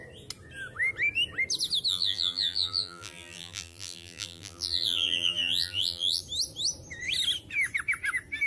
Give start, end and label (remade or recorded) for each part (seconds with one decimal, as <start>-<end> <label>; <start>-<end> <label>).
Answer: 0.0-1.9 recorded; 1.9-6.2 remade; 6.2-8.5 recorded